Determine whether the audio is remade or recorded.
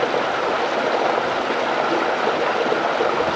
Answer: recorded